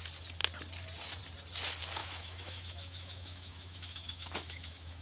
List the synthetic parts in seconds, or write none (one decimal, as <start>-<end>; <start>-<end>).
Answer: 2.0-5.0